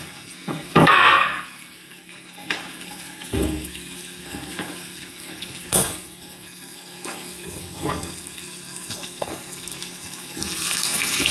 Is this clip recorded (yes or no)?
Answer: no